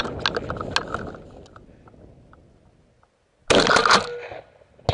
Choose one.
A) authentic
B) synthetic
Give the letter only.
A